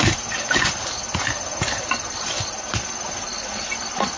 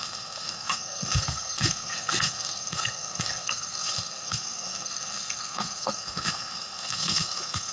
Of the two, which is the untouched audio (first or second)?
first